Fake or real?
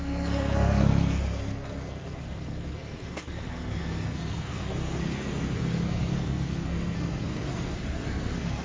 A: fake